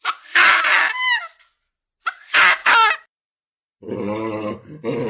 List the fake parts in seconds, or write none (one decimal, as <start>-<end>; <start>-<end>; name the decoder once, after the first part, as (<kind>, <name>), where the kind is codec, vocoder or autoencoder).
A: none